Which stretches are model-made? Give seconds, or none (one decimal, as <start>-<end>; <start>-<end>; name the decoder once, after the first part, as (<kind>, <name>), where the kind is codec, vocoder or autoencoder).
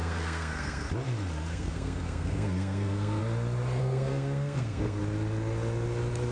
0.0-0.9 (codec, SNAC); 1.5-3.2; 3.8-5.0